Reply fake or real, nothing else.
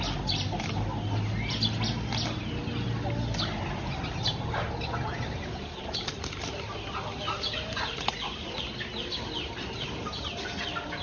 real